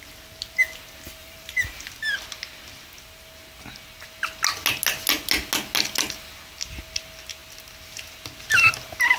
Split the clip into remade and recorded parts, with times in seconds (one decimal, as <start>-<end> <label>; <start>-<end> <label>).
0.0-1.2 recorded; 1.2-1.9 remade; 1.9-9.2 recorded